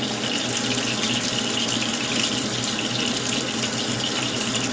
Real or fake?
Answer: real